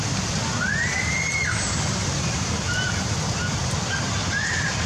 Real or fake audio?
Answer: fake